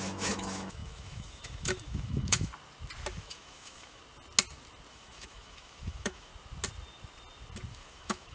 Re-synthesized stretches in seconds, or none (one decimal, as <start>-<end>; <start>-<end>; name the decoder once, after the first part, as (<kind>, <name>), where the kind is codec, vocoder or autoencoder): 0.0-2.5 (autoencoder, DAC-VAE); 3.1-4.0; 4.9-6.3; 7.7-8.3